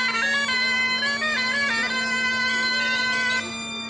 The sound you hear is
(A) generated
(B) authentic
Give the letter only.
B